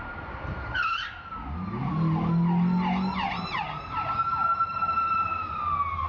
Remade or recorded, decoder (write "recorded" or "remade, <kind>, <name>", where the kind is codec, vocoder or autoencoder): recorded